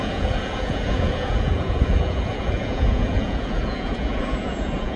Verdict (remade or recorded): remade